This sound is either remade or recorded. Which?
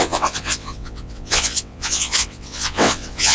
remade